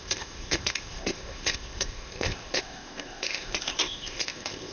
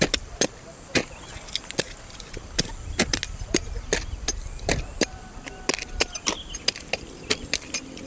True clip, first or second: second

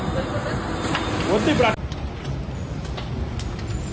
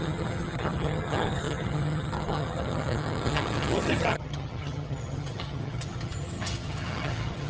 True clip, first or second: first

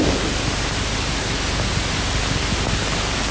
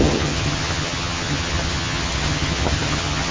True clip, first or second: first